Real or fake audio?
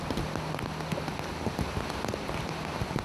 real